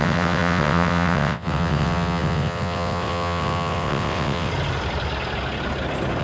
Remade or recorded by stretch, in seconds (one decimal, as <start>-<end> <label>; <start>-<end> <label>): 0.0-4.5 remade; 4.5-6.2 recorded